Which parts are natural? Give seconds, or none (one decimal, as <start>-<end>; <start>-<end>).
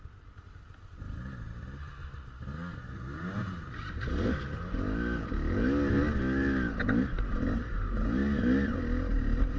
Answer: 0.0-9.6